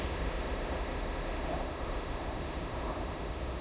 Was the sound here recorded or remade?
remade